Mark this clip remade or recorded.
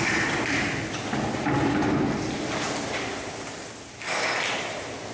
recorded